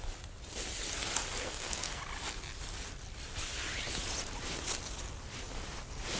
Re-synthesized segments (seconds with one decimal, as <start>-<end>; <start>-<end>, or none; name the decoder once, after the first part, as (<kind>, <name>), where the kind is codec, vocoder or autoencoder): 1.4-2.0 (codec, SNAC)